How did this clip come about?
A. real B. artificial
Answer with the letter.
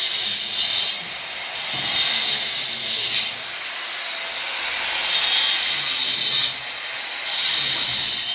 A